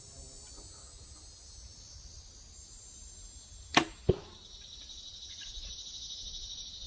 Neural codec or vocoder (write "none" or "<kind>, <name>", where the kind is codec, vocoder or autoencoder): none